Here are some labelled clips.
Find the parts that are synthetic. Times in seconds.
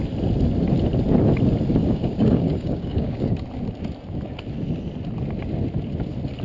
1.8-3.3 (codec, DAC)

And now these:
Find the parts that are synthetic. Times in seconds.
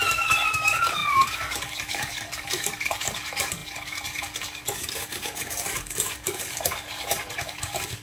0.0-8.0 (codec, DAC)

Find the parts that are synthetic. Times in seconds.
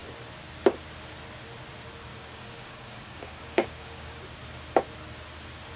2.1-4.2 (codec, DAC)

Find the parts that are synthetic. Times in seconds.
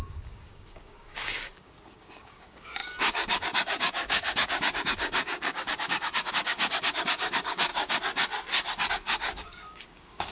0.0-7.7 (codec, DAC); 8.9-10.3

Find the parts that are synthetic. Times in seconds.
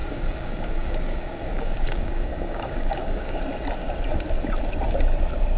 0.0-3.4 (codec, DAC)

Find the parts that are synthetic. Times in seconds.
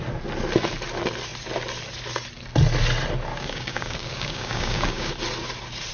3.3-5.1 (codec, DAC)